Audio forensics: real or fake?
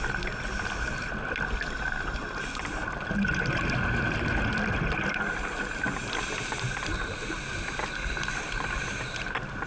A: real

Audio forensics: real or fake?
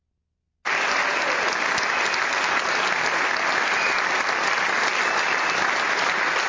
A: real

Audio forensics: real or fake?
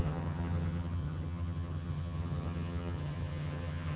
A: fake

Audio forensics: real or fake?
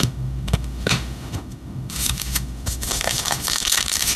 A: fake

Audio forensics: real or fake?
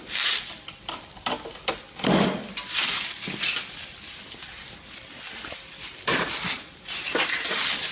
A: real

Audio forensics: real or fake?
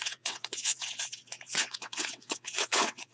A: fake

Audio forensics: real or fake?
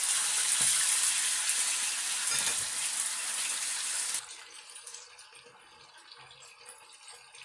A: real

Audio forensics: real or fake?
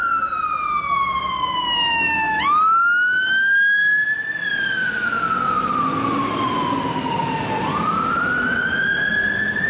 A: real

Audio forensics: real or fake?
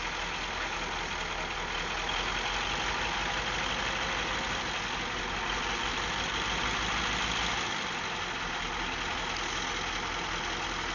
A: real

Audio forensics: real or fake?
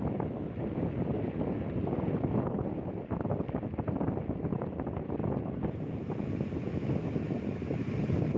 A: real